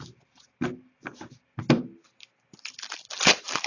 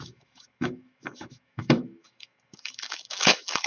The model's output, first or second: second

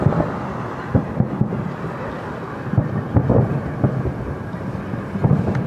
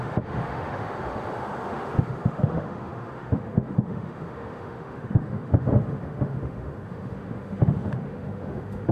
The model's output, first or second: second